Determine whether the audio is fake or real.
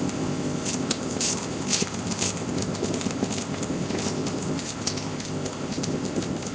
fake